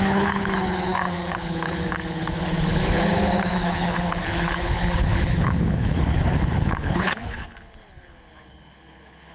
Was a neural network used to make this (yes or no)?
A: yes